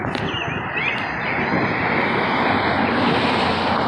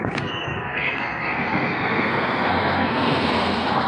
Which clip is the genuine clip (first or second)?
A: first